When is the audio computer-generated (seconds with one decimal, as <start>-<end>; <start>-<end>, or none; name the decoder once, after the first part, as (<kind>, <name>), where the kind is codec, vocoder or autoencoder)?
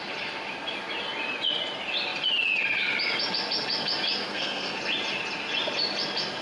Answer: 4.2-4.8 (codec, SNAC)